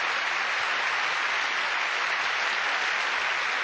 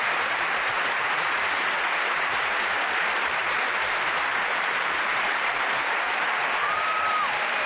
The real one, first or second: first